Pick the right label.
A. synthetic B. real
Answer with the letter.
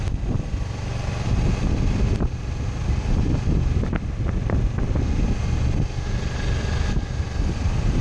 B